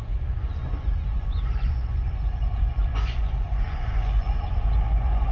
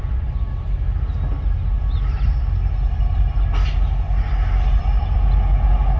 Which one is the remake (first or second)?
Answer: first